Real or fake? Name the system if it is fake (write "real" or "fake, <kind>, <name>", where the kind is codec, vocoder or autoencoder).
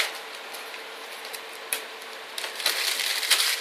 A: fake, vocoder, BigVGAN v2